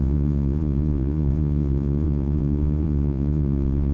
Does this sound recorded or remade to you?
remade